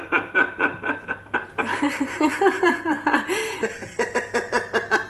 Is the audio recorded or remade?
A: remade